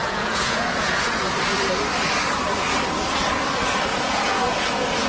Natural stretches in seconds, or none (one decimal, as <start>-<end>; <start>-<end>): 1.4-3.9